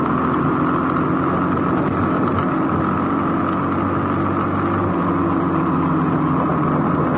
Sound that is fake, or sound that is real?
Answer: real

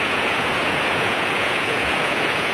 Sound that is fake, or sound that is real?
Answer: fake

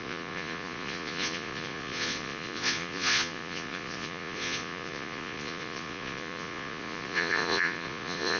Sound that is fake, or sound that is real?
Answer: fake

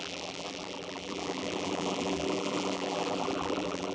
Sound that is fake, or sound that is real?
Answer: fake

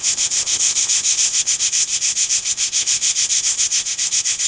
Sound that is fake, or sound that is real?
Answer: fake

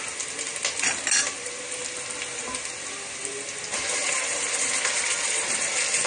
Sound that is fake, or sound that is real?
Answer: real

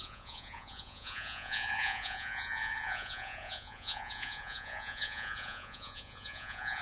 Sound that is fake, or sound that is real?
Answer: fake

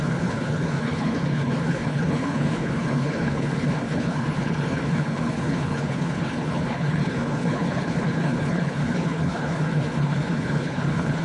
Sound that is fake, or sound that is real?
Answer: fake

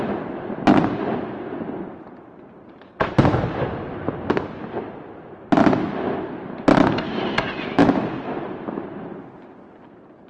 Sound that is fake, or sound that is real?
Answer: real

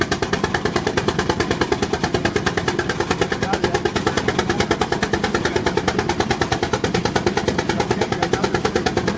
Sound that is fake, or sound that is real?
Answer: real